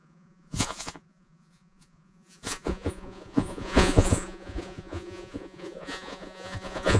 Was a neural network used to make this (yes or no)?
yes